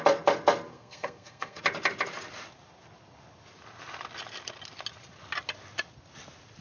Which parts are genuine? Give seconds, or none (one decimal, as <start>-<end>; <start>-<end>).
0.0-0.7; 1.6-6.6